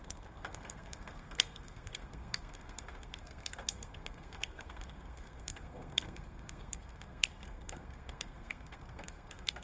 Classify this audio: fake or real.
fake